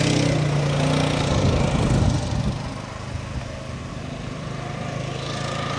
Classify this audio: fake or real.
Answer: real